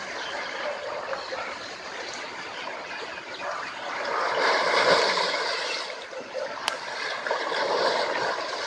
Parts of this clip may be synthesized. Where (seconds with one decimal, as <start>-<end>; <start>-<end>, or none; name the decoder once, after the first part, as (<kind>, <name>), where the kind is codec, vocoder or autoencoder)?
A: none